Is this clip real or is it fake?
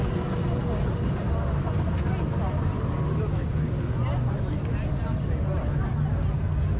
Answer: real